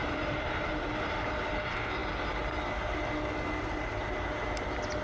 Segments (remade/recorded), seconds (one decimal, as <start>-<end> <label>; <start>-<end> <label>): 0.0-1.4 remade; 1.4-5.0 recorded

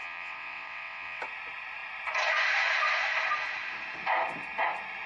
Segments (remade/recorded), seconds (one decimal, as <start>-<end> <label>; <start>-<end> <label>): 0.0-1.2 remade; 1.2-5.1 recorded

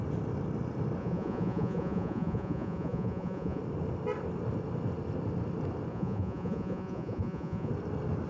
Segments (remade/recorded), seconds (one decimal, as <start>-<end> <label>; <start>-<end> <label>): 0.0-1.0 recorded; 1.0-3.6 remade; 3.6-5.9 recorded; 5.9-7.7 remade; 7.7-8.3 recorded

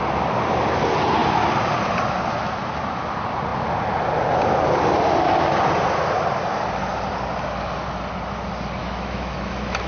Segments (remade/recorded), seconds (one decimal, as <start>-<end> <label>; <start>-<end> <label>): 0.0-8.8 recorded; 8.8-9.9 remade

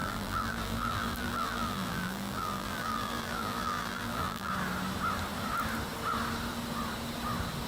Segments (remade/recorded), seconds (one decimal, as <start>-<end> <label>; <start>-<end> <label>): 0.0-4.5 remade; 4.5-7.7 recorded

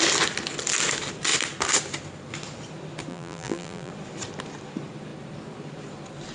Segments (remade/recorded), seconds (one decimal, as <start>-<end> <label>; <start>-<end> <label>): 0.0-3.1 recorded; 3.1-3.9 remade; 3.9-6.3 recorded

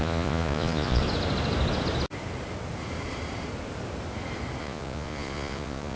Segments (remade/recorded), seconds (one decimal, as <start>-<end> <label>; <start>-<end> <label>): 0.0-1.0 remade; 1.0-4.6 recorded; 4.6-6.0 remade